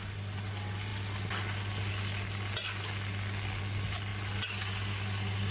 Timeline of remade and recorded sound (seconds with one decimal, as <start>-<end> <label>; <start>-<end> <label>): 0.0-5.5 recorded